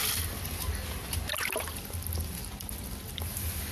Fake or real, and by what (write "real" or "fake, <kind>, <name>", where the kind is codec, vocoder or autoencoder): real